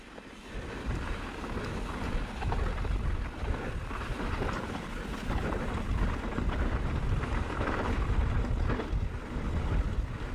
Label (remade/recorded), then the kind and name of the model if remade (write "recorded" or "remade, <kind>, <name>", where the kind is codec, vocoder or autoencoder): recorded